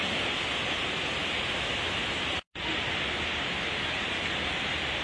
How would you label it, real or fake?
real